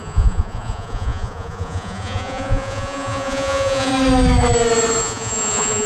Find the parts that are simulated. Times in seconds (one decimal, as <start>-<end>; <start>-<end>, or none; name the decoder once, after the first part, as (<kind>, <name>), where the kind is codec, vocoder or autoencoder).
0.0-3.9 (vocoder, Vocos); 5.0-5.9